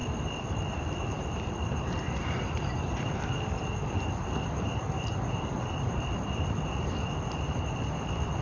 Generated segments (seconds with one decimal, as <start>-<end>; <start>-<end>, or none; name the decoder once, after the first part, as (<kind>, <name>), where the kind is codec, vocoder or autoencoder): 0.0-4.7 (vocoder, BigVGAN v2); 5.4-8.4